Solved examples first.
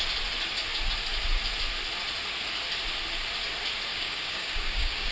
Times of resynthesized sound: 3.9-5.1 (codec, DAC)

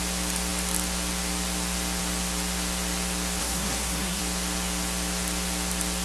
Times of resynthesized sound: 3.4-4.2 (codec, SNAC)

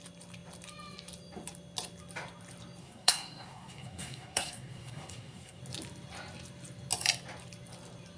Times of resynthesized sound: 2.8-5.6 (codec, SNAC)

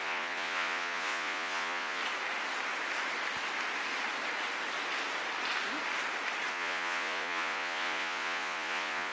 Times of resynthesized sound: 0.0-2.0 (vocoder, Vocos); 6.5-9.1

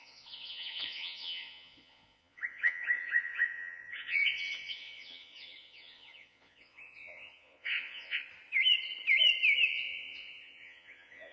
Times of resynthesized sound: 0.0-8.2 (vocoder, Vocos); 9.7-11.3